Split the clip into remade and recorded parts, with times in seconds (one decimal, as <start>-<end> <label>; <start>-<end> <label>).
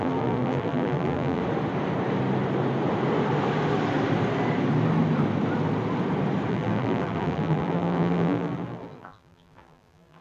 0.0-1.4 remade; 1.4-6.5 recorded; 6.5-10.2 remade